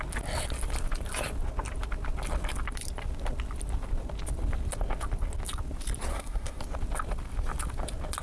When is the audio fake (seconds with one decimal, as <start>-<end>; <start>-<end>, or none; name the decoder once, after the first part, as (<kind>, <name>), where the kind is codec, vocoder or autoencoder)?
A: 6.1-6.6 (codec, SNAC)